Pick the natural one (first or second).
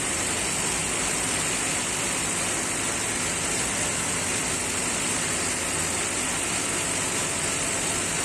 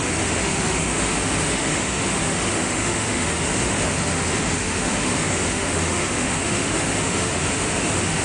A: first